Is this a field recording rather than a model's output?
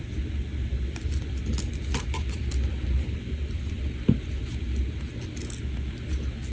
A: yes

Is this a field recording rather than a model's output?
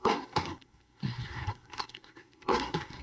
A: no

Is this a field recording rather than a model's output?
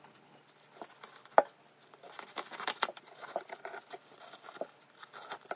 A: yes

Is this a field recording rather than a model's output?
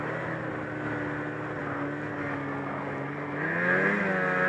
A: yes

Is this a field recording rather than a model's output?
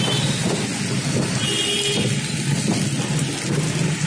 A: yes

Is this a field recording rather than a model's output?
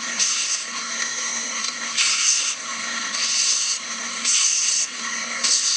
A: no